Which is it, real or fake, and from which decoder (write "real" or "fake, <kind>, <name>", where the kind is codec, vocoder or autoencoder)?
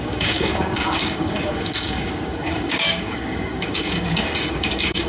fake, codec, DAC